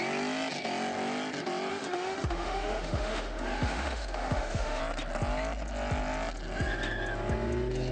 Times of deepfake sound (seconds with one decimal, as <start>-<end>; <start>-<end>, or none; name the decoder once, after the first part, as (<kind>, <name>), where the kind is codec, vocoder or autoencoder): 1.7-4.8 (autoencoder, DAC-VAE)

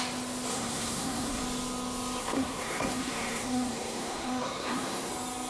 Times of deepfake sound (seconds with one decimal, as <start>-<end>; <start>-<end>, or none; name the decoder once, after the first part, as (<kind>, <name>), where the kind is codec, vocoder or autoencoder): 0.5-1.4 (codec, SNAC); 2.2-5.1

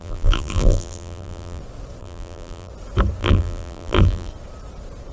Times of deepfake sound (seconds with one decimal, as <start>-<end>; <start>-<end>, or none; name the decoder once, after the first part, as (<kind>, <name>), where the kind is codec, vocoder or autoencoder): 0.0-1.6 (vocoder, BigVGAN v2); 2.0-2.7; 3.2-4.3

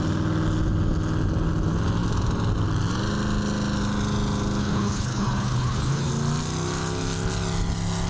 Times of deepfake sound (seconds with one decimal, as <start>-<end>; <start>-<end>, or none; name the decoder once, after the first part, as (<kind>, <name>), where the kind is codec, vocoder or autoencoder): 4.6-6.1 (codec, HILCodec)

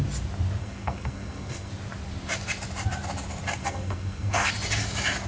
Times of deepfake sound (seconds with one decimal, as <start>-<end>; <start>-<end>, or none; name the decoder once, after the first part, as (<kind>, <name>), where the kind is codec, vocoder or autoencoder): 0.6-1.7 (codec, SNAC); 3.6-4.5

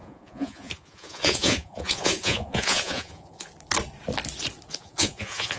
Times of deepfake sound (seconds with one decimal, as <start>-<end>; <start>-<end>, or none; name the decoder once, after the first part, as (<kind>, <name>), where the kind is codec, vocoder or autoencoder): 0.0-3.5 (vocoder, Vocos); 4.7-5.6